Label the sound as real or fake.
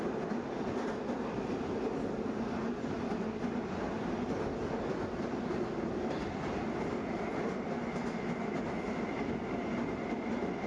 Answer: real